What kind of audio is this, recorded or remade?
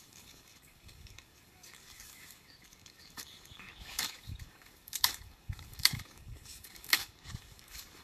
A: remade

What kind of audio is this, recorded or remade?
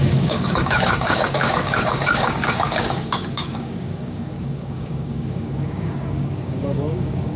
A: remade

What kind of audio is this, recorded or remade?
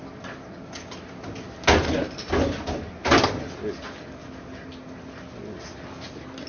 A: recorded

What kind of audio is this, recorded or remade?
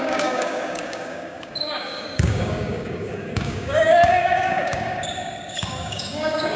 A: remade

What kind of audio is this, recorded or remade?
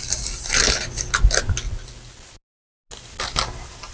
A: recorded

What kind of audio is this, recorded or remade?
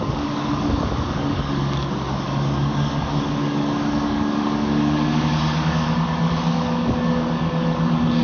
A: remade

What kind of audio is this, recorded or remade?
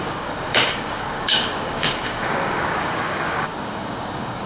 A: remade